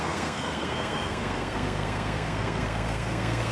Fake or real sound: fake